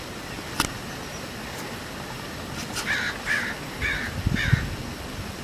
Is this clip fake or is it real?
real